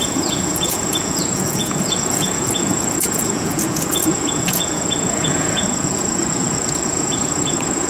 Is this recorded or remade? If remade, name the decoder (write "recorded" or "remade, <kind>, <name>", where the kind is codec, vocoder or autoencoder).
remade, vocoder, Vocos